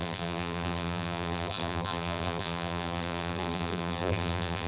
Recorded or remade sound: remade